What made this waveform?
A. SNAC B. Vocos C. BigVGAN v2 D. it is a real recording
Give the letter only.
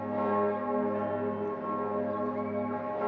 D